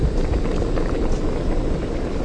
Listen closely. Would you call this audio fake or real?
real